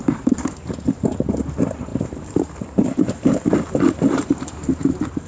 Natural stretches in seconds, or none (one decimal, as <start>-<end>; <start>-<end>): none